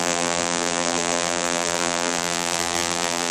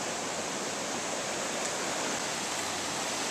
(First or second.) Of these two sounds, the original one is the second